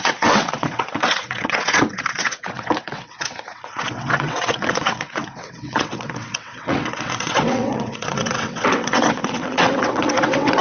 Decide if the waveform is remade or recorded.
remade